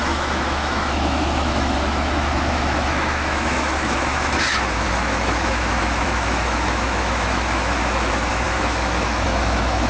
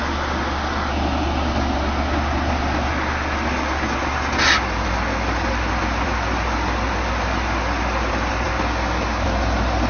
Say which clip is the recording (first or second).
second